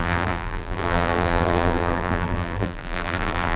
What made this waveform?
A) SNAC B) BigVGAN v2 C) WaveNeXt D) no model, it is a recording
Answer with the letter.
B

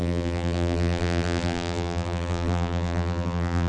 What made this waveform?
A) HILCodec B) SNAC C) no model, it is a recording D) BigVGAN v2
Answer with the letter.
D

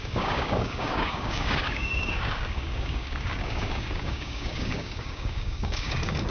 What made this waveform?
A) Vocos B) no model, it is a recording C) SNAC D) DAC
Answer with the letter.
D